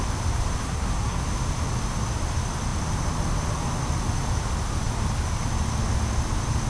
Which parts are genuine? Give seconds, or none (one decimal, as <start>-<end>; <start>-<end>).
0.0-0.6; 1.2-6.7